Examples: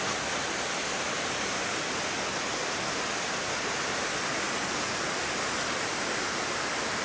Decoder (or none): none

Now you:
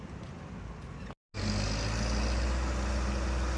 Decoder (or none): none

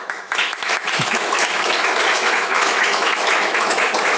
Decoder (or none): autoencoder, DAC-VAE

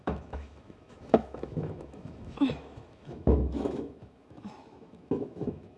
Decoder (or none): autoencoder, DAC-VAE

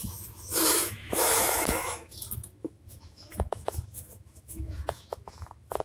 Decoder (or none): autoencoder, DAC-VAE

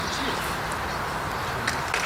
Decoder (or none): none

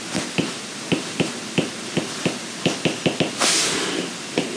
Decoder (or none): none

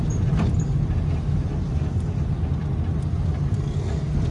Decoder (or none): none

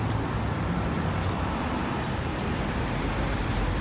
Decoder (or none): none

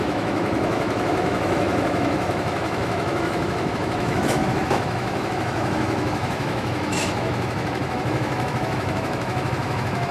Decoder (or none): autoencoder, DAC-VAE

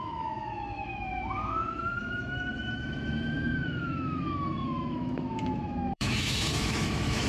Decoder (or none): autoencoder, DAC-VAE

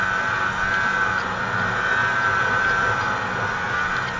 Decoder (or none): none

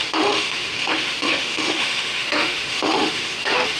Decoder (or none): autoencoder, DAC-VAE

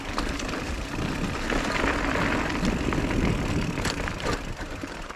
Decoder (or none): none